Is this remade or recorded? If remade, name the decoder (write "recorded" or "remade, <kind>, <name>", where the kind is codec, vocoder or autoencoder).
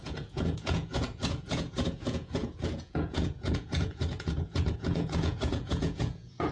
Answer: remade, vocoder, Vocos